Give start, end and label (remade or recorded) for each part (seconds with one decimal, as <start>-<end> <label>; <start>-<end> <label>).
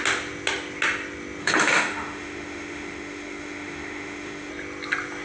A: 0.0-1.4 recorded; 1.4-4.5 remade; 4.5-5.2 recorded